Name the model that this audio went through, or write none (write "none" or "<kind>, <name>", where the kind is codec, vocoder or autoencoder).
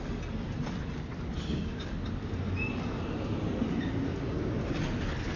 none